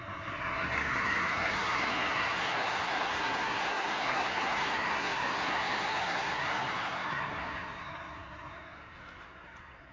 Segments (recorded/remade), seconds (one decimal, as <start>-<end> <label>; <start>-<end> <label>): 0.0-9.9 remade